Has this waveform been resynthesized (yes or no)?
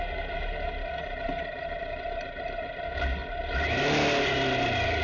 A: no